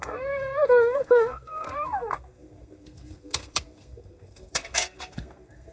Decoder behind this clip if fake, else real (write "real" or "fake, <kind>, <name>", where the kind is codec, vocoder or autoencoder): fake, codec, SNAC